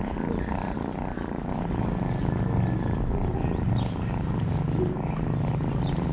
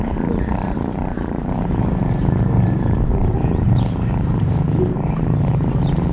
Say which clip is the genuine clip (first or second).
first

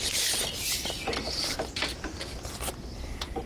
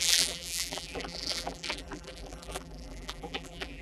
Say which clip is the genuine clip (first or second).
first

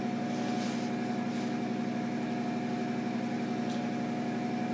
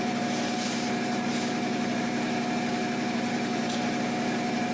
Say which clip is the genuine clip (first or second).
first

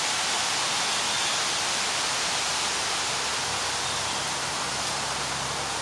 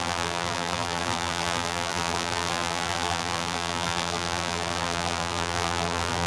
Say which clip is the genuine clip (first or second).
first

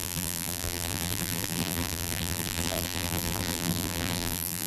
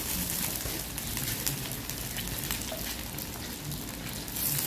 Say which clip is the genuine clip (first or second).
second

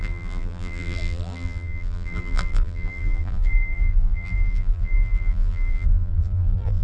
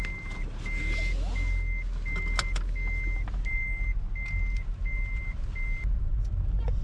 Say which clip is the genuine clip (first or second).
second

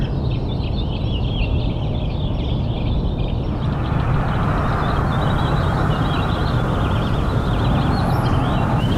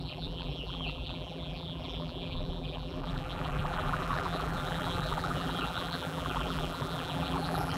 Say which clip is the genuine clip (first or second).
first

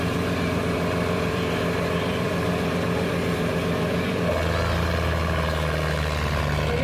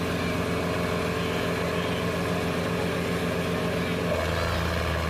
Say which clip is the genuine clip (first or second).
second